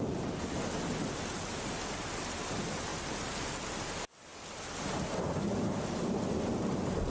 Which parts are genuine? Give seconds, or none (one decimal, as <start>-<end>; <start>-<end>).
0.0-7.1